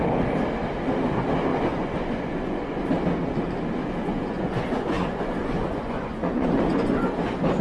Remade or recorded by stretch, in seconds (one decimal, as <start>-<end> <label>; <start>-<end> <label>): 0.0-1.5 recorded; 1.5-2.8 remade; 2.8-3.8 recorded; 3.8-7.1 remade; 7.1-7.6 recorded